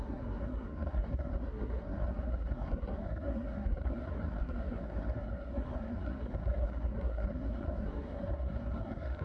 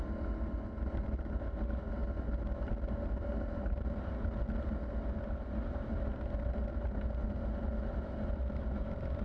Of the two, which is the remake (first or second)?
first